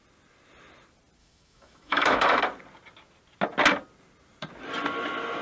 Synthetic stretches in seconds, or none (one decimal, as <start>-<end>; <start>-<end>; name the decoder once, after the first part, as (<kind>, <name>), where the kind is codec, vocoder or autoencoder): 1.2-2.4 (autoencoder, DAC-VAE)